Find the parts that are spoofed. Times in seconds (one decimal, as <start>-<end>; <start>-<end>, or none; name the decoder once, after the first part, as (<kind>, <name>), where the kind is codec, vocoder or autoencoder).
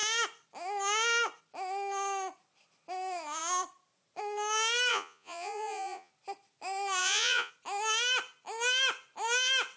4.9-6.1 (vocoder, Vocos); 7.0-7.5